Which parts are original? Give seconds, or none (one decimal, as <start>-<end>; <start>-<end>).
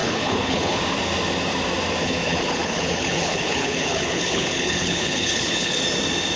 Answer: 0.8-2.0; 5.8-6.4